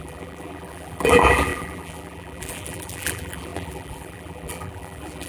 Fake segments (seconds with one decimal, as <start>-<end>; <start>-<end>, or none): 0.0-5.3

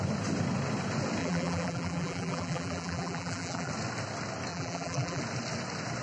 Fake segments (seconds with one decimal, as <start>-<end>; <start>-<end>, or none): 1.2-3.7; 4.5-5.2

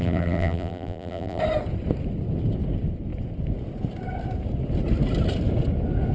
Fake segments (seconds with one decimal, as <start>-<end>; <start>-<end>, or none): 0.0-1.4

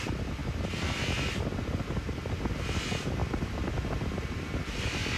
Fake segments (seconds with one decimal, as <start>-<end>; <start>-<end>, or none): 0.4-1.0; 3.2-3.7

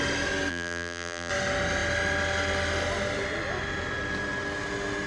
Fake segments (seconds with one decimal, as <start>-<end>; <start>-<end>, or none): 0.5-1.3

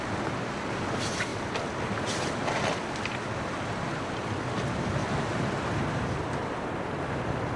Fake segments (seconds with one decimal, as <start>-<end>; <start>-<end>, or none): none

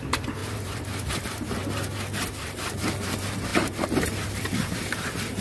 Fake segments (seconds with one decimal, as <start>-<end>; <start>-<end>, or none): 0.0-1.6; 2.7-5.4

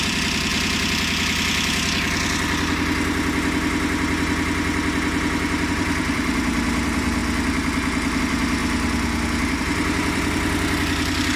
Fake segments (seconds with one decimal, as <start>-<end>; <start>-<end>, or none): 0.0-0.5; 5.7-7.2; 8.2-8.6; 9.6-11.4